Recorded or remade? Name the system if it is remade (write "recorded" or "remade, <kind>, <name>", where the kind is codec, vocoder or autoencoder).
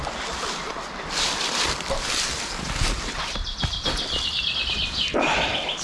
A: recorded